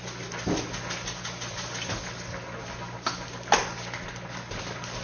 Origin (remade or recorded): recorded